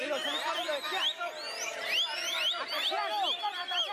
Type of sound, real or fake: real